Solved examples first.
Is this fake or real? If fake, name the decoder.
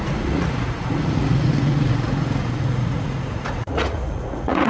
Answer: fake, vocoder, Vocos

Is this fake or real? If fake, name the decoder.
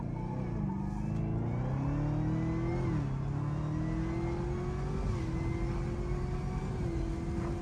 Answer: real